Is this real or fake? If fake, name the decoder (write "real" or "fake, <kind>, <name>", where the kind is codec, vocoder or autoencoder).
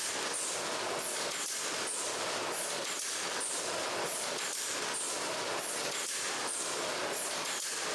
real